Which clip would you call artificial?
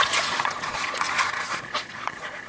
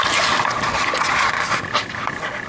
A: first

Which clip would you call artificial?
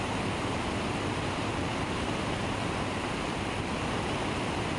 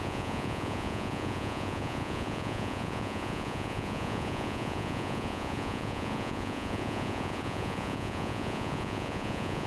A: second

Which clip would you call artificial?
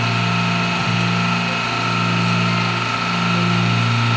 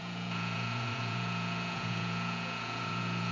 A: second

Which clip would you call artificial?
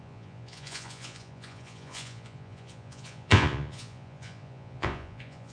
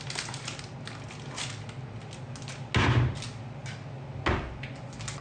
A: first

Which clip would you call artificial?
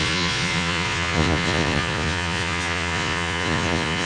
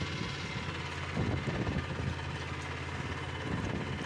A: first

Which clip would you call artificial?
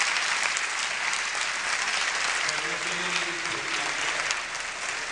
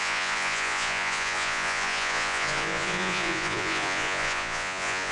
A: second